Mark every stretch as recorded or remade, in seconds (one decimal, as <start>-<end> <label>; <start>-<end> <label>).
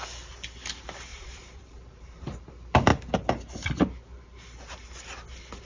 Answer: 0.0-1.1 recorded; 1.1-2.5 remade; 2.5-5.6 recorded